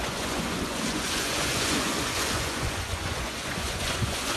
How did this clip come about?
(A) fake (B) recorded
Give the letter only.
A